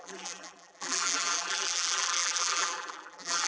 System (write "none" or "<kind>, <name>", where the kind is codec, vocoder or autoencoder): vocoder, BigVGAN v2